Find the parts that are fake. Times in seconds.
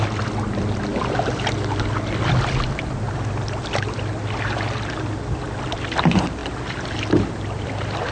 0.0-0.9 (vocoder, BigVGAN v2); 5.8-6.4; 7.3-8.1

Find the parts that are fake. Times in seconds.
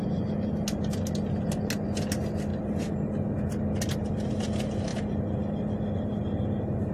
none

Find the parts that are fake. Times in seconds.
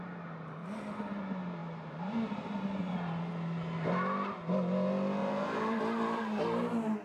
0.6-1.2 (vocoder, BigVGAN v2); 1.6-2.9; 5.2-5.8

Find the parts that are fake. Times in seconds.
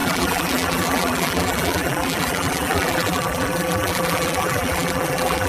0.0-5.5 (vocoder, BigVGAN v2)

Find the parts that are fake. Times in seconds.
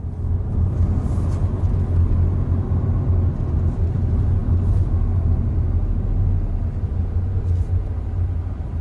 none